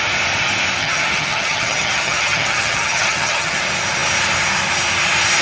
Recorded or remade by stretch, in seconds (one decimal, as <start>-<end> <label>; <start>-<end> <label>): 0.0-0.8 recorded; 0.8-3.6 remade; 3.6-5.4 recorded